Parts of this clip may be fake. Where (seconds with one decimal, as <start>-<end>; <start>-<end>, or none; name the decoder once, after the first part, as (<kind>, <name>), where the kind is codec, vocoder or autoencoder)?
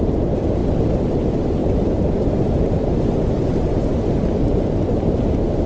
0.6-1.2 (vocoder, BigVGAN v2); 1.6-2.5